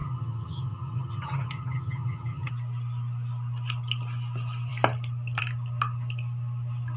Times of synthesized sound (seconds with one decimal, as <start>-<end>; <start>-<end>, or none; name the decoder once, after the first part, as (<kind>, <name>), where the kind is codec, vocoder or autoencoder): 0.0-2.5 (vocoder, HiFi-GAN)